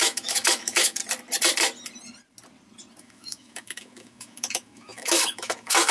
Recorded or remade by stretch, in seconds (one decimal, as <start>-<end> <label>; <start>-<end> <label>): 0.0-1.0 remade; 1.0-3.0 recorded; 3.0-5.9 remade